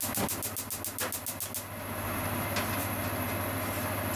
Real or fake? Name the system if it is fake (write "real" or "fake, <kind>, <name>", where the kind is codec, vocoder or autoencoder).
real